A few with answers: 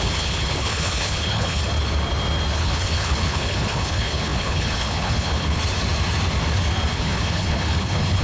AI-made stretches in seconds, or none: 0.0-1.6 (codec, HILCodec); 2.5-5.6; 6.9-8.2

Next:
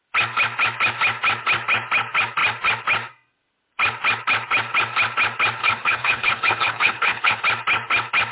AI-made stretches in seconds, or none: 5.6-7.4 (codec, HILCodec)

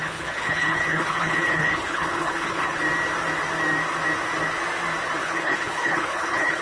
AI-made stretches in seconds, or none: 0.0-2.8 (codec, HILCodec); 5.2-6.6

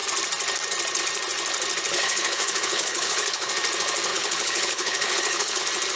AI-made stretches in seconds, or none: 1.9-3.5 (codec, HILCodec); 4.1-5.6

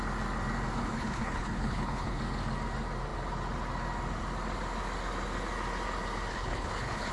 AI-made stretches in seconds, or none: 0.8-2.2 (codec, HILCodec); 6.3-7.1

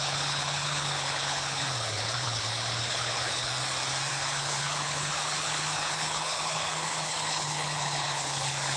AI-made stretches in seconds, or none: 0.0-3.5 (codec, HILCodec); 4.1-8.8

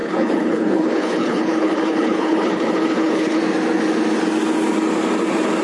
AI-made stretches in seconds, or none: 0.0-3.4 (codec, HILCodec)